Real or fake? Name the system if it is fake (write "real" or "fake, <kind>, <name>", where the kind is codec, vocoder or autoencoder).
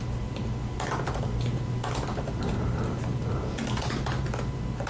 real